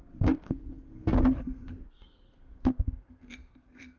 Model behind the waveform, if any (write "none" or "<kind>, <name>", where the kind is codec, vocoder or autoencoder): codec, SNAC